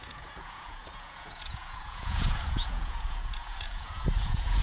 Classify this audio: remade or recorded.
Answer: remade